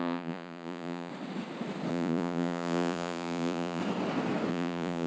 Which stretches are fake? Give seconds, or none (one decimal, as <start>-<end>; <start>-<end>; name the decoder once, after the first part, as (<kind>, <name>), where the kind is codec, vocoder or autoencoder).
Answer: 0.0-1.1 (vocoder, Vocos); 1.9-3.8; 4.5-5.1